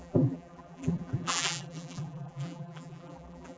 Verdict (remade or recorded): remade